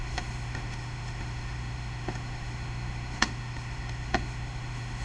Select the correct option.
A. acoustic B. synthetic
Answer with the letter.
B